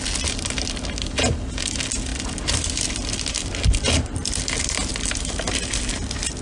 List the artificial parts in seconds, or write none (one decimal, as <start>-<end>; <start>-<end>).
2.1-4.5; 4.9-5.9